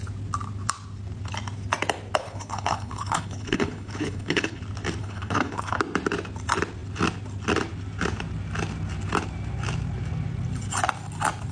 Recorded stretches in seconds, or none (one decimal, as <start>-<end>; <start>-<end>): 0.0-2.2; 4.6-5.0; 5.8-11.5